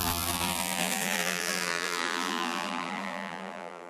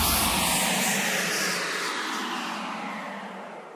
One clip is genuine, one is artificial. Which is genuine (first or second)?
second